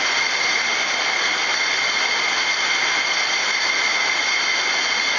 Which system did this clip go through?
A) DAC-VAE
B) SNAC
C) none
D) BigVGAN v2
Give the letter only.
C